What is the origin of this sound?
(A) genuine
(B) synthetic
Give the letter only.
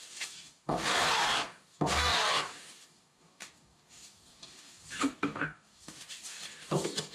B